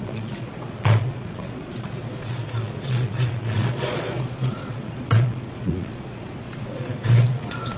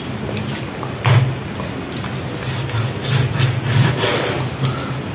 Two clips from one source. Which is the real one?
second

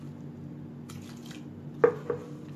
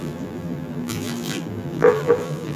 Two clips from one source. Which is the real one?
first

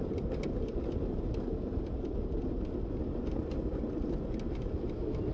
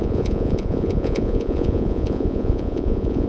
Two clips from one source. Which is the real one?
first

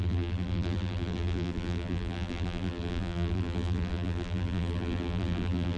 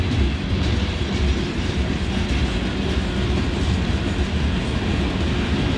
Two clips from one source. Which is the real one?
second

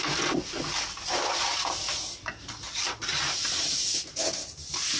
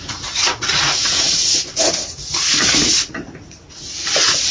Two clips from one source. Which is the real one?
first